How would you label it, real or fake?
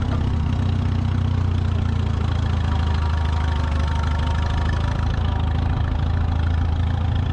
real